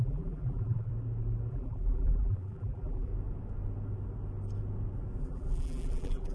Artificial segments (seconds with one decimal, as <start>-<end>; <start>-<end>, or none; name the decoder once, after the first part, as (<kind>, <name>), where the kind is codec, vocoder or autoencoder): 0.0-0.9 (vocoder, BigVGAN v2); 1.5-3.1; 5.2-6.3

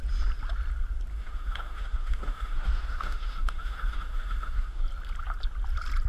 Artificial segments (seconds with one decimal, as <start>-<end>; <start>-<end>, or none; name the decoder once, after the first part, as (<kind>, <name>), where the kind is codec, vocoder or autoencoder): 1.1-4.8 (autoencoder, DAC-VAE)

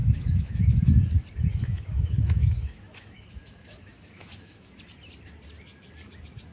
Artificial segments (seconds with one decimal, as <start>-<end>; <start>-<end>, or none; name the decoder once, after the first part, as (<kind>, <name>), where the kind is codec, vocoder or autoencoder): 0.0-1.0 (autoencoder, DAC-VAE); 1.5-4.8

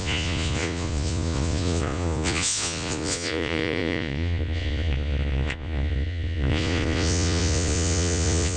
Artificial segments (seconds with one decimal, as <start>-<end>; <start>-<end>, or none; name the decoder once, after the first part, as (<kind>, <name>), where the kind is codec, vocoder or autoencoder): 0.0-8.6 (vocoder, Vocos)

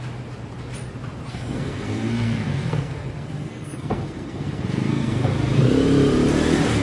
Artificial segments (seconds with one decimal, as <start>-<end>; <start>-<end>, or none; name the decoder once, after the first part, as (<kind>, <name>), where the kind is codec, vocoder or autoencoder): 1.3-5.3 (codec, SNAC)

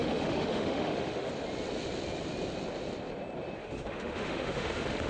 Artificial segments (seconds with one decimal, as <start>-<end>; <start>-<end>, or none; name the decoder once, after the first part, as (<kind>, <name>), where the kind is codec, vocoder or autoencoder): 0.0-1.3 (autoencoder, DAC-VAE); 3.6-5.1

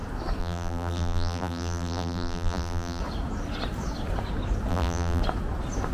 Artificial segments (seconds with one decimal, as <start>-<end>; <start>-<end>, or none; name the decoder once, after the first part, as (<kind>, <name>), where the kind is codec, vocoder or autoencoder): 0.4-3.0 (vocoder, BigVGAN v2); 4.7-5.2

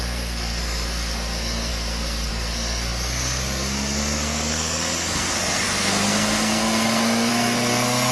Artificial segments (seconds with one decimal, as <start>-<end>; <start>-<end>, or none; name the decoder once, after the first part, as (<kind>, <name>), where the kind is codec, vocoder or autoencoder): 0.0-8.1 (codec, SNAC)